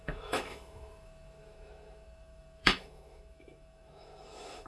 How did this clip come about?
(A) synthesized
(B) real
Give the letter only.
A